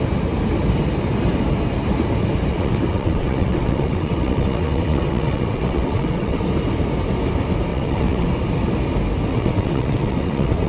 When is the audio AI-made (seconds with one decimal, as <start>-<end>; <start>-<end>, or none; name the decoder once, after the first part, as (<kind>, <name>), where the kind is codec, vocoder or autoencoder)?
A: 2.5-6.4 (vocoder, WaveNeXt); 7.7-8.3; 9.3-10.7